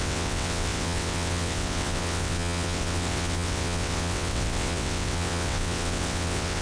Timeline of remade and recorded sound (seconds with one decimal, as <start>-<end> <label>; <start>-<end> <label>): 0.0-6.6 remade